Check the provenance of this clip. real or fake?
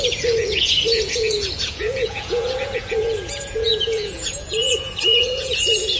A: fake